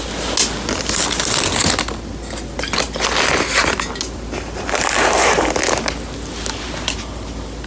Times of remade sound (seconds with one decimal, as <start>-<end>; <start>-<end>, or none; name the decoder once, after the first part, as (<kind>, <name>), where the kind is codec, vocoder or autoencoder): none